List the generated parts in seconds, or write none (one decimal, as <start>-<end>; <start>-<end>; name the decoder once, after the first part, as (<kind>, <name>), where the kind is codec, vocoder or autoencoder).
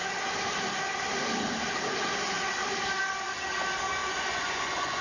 4.0-5.0 (vocoder, Vocos)